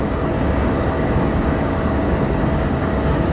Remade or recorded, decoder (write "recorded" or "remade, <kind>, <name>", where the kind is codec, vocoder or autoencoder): remade, codec, DAC